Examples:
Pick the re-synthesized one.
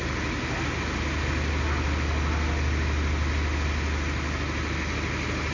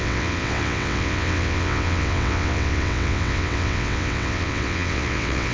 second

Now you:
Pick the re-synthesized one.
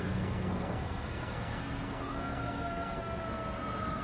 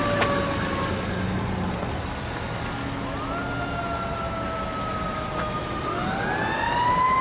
first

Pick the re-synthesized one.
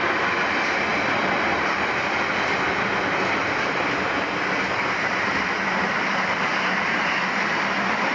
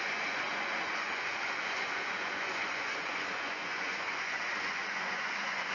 second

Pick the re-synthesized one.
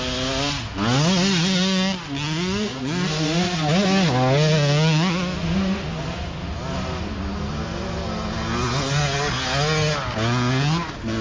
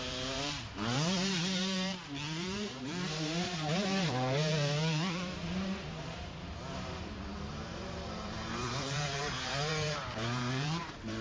second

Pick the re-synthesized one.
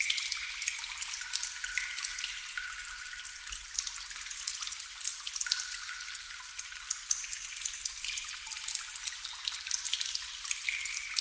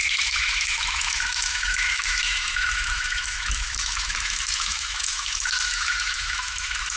second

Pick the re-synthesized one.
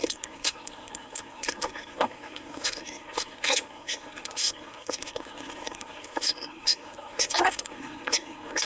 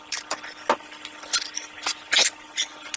first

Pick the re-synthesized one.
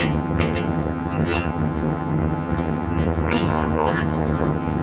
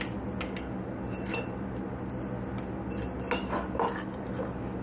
first